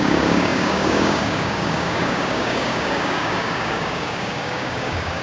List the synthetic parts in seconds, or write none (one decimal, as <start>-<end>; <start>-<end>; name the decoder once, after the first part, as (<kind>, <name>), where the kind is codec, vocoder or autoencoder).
0.0-5.2 (codec, DAC)